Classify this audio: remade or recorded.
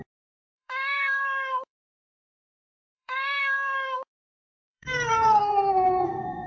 remade